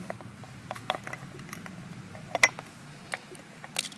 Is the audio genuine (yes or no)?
yes